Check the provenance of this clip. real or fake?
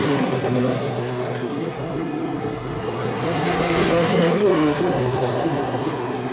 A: fake